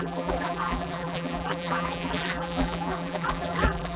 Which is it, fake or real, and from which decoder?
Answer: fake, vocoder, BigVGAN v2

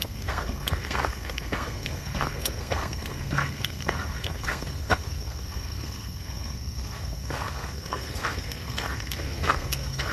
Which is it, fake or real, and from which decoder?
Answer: fake, codec, SNAC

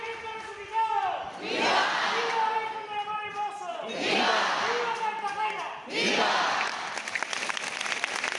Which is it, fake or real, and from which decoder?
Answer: real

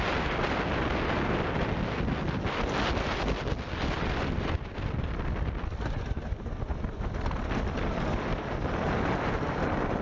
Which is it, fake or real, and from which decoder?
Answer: real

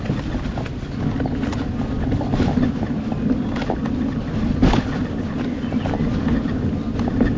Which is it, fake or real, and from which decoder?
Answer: real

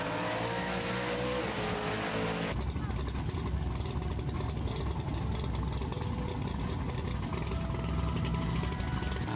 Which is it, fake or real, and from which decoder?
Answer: real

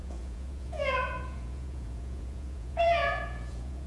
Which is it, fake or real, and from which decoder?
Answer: fake, vocoder, Vocos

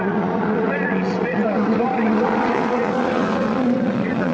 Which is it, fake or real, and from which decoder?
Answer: fake, vocoder, Vocos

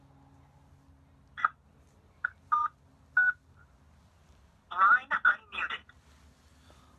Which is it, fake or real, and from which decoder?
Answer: real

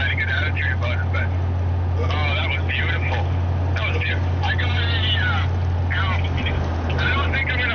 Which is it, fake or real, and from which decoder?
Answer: real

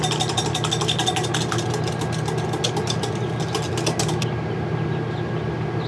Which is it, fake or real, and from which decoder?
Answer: real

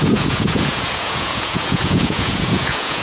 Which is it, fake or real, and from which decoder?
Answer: fake, vocoder, Vocos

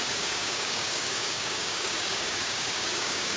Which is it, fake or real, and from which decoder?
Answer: fake, codec, DAC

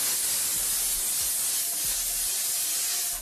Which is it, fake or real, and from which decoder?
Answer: real